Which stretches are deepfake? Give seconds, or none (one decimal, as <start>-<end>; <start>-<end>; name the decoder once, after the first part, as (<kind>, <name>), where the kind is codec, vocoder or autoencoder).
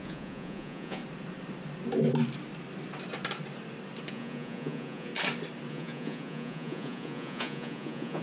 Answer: 0.0-1.0 (vocoder, Vocos); 4.1-5.1; 5.7-8.2